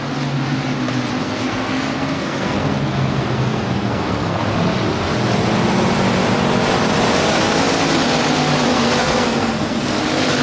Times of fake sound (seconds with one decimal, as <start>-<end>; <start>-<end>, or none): 1.2-4.4; 8.7-9.9